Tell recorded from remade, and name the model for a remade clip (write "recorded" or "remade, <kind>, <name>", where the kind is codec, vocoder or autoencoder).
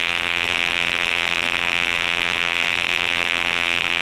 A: remade, vocoder, BigVGAN v2